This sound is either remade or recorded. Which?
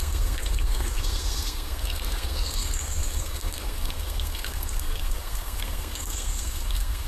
remade